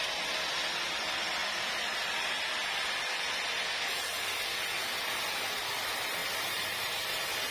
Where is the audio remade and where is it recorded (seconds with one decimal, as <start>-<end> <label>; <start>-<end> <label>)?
0.0-6.2 recorded; 6.2-6.9 remade; 6.9-7.5 recorded